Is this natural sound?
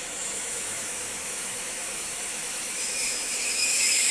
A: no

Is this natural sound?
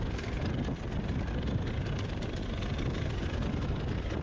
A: yes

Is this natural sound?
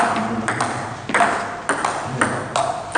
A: yes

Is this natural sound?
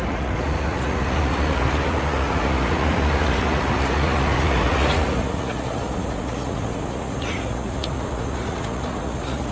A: no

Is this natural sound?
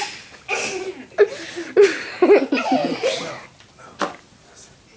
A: yes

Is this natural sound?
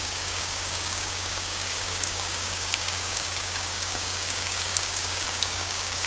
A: no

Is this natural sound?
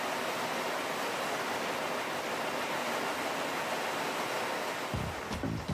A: yes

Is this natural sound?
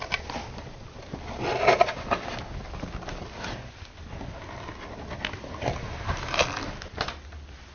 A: yes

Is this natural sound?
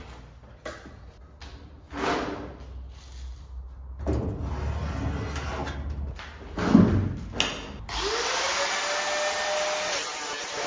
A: yes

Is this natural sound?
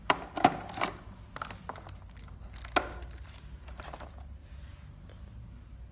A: yes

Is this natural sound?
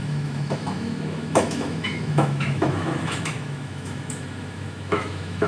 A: no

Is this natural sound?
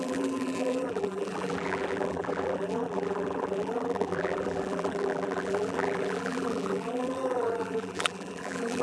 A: no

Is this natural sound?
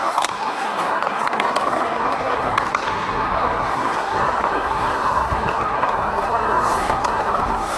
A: no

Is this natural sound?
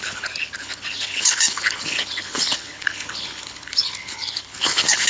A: no